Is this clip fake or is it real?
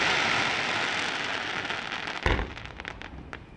real